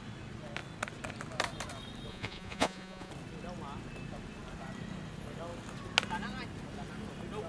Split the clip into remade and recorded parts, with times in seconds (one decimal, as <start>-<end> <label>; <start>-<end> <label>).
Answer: 0.0-2.1 recorded; 2.1-3.1 remade; 3.1-7.5 recorded